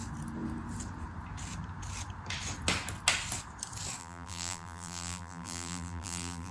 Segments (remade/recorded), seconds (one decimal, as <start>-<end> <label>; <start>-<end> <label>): 0.0-4.0 recorded; 4.0-6.5 remade